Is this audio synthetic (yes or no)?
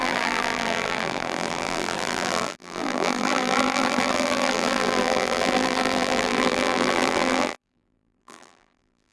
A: yes